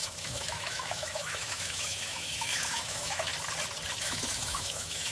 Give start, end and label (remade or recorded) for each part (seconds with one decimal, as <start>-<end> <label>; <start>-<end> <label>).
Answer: 0.0-3.3 remade; 3.3-4.0 recorded; 4.0-5.1 remade